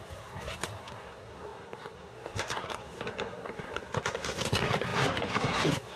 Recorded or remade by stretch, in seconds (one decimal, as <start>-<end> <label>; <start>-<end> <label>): 0.0-6.0 remade